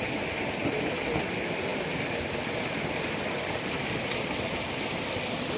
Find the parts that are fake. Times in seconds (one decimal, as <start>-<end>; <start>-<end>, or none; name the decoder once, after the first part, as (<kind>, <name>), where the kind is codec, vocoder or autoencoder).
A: none